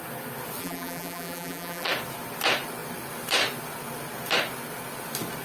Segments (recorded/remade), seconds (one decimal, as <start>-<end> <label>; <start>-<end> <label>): 0.0-0.6 recorded; 0.6-1.9 remade; 1.9-5.4 recorded